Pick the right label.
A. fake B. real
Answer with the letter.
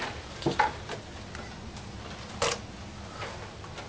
B